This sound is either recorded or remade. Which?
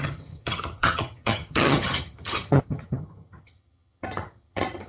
remade